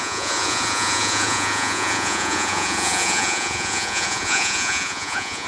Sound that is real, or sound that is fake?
fake